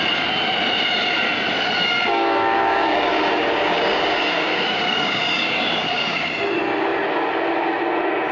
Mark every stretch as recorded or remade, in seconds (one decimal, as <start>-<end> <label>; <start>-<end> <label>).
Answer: 0.0-1.8 recorded; 1.8-6.3 remade; 6.3-8.3 recorded